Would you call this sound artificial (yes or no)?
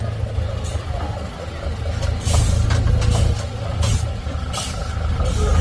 no